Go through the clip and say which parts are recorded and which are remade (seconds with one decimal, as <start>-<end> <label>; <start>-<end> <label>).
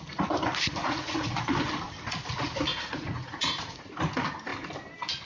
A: 0.0-0.8 recorded; 0.8-1.4 remade; 1.4-2.7 recorded; 2.7-3.8 remade; 3.8-5.3 recorded